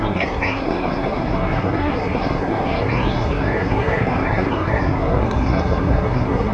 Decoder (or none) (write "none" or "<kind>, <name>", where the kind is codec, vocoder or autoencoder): codec, SNAC